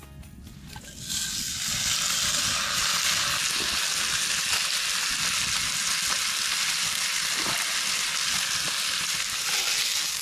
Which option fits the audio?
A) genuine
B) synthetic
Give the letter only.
A